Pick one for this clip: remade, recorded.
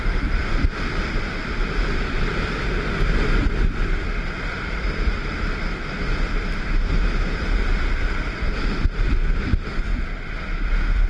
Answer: recorded